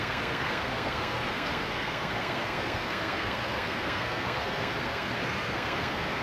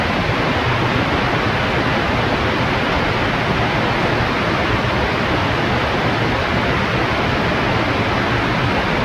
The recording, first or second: second